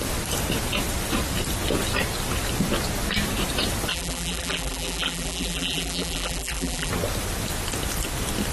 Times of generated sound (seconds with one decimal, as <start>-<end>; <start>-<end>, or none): 3.9-6.9